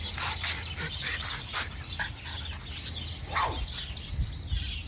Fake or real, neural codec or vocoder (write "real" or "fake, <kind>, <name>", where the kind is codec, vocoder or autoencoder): real